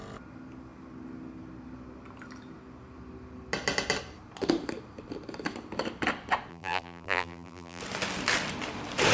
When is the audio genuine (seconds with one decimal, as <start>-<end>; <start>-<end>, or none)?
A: 0.0-6.5; 7.8-9.1